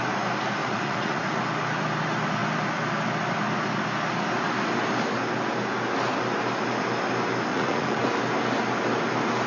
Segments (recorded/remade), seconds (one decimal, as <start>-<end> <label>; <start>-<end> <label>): 0.0-0.6 recorded; 0.6-1.4 remade; 1.4-7.5 recorded; 7.5-8.0 remade; 8.0-9.5 recorded